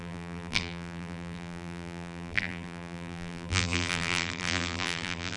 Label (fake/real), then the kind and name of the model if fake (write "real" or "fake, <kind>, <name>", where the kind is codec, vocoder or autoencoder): fake, vocoder, BigVGAN v2